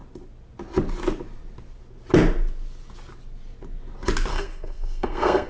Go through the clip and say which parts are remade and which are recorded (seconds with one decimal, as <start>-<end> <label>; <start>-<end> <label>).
0.0-4.3 recorded; 4.3-5.5 remade